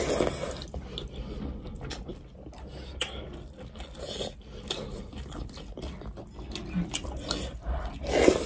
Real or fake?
real